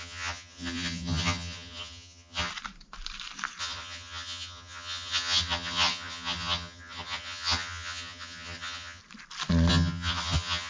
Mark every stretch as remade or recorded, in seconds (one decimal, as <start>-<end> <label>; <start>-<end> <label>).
0.0-2.5 remade; 2.5-3.6 recorded; 3.6-9.0 remade; 9.0-9.7 recorded; 9.7-10.7 remade